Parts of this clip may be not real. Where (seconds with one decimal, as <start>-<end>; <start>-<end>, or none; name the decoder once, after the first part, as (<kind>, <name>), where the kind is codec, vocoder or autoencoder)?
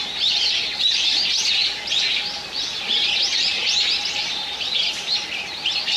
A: none